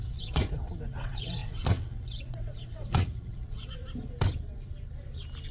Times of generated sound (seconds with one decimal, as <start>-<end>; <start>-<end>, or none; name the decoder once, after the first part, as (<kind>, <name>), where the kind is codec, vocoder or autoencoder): 0.0-0.4 (vocoder, WaveNeXt); 1.0-3.8